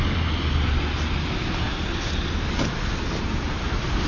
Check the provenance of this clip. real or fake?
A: real